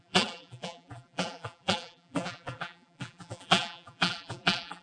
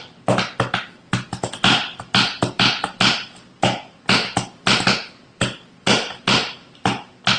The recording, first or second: second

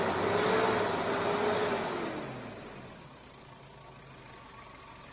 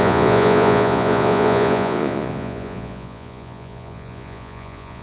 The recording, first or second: first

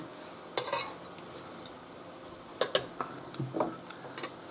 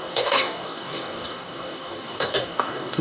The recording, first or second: first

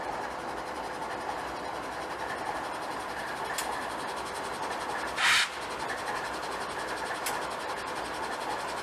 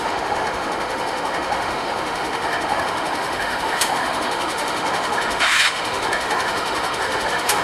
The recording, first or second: first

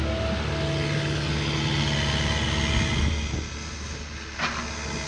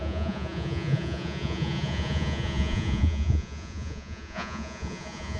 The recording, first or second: first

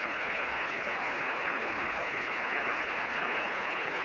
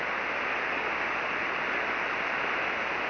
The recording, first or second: second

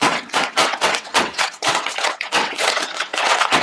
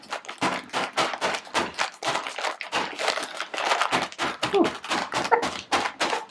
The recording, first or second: second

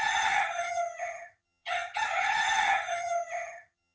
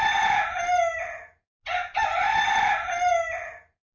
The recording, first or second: second